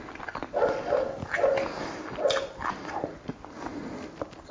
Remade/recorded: recorded